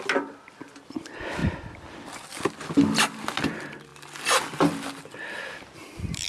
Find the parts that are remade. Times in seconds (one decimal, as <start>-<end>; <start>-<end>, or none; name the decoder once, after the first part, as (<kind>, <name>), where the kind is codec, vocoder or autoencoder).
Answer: none